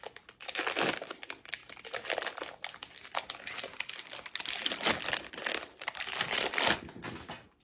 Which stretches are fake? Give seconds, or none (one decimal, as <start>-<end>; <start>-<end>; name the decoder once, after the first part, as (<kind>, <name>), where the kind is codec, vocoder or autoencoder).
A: 5.4-6.5 (vocoder, BigVGAN v2)